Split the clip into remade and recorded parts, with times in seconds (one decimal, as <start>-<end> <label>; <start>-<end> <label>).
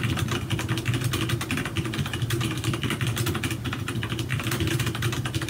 0.0-2.1 recorded; 2.1-2.9 remade; 2.9-4.3 recorded; 4.3-4.8 remade; 4.8-5.5 recorded